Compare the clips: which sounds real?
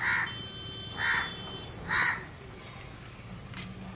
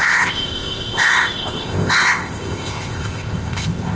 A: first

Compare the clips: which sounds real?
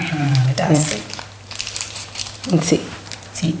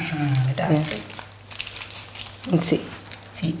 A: second